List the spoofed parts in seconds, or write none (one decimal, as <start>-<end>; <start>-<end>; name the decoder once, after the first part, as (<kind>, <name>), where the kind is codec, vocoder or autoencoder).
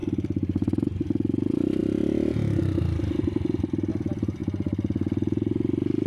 none